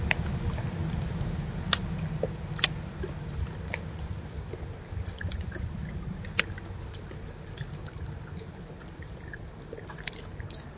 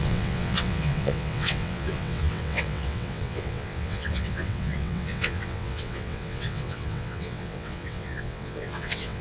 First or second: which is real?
first